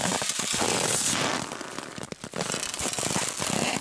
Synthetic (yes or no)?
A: no